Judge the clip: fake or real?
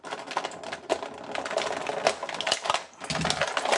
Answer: real